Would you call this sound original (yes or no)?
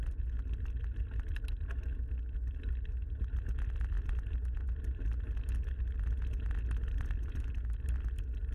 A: yes